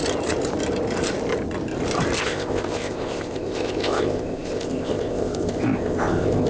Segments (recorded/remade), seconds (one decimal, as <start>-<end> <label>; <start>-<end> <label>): 0.0-2.2 recorded; 2.2-6.5 remade